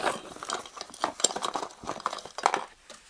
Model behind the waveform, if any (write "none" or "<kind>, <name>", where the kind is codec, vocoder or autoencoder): none